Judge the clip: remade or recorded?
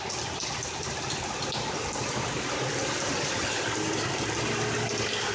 recorded